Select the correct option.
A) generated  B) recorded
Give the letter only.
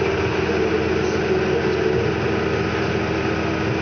B